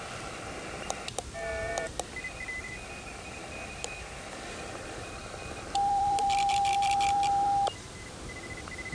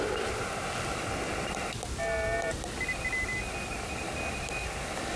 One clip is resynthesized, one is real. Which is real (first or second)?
second